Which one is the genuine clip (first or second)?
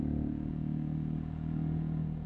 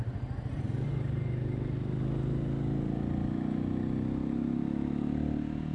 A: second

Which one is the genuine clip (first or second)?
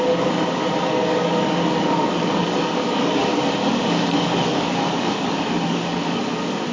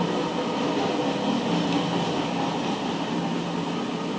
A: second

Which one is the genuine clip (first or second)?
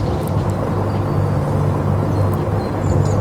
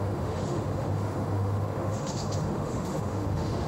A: first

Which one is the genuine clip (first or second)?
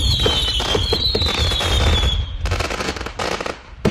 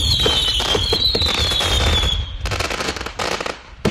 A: first